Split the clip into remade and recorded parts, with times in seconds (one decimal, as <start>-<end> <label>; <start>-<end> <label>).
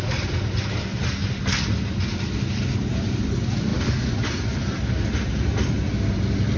0.0-6.6 recorded